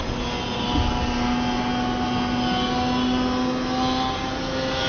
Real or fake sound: real